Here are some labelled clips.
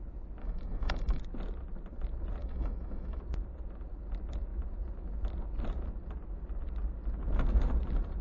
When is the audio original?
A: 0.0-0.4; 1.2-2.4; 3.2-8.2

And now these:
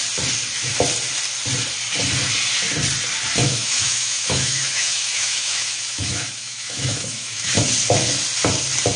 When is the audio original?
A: 0.0-3.4; 7.5-9.0